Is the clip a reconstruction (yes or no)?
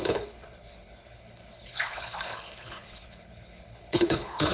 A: yes